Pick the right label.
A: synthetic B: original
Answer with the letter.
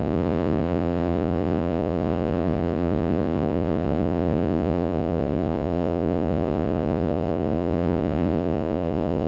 A